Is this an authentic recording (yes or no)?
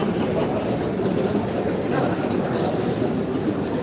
no